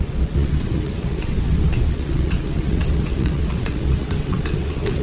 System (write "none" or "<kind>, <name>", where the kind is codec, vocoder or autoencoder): vocoder, WaveNeXt